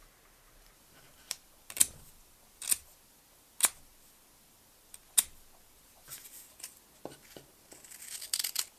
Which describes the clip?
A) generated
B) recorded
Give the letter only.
B